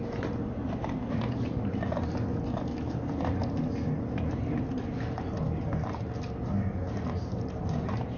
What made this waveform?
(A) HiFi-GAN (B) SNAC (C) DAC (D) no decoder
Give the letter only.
D